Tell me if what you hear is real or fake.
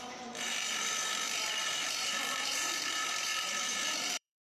fake